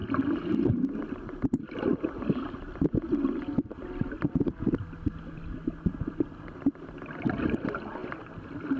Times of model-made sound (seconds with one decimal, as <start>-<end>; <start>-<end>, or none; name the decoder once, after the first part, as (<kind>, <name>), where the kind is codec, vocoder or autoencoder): none